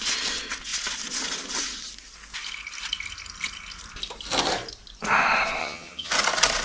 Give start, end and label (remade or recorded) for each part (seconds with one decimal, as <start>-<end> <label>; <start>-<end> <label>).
0.0-5.6 recorded; 5.6-6.1 remade; 6.1-6.6 recorded